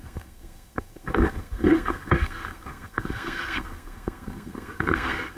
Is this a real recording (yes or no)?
no